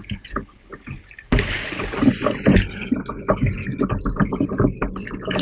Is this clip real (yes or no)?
yes